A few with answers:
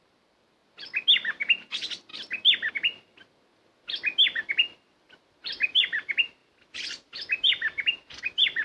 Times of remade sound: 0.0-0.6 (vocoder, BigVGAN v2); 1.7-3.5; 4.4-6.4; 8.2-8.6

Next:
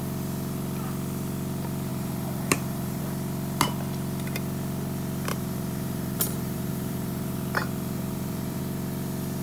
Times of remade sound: 1.9-3.0 (vocoder, BigVGAN v2); 5.3-8.6

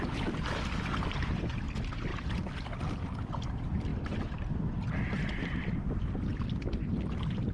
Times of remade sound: 0.0-2.1 (vocoder, BigVGAN v2); 2.8-7.5